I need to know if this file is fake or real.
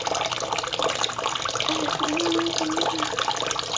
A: real